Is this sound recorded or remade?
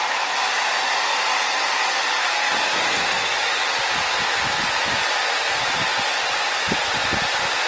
recorded